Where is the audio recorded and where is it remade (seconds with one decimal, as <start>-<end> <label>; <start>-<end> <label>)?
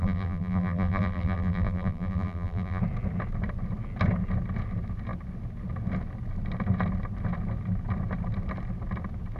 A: 0.0-2.8 remade; 2.8-9.4 recorded